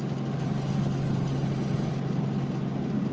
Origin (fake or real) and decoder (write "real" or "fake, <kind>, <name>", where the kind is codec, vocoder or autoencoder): real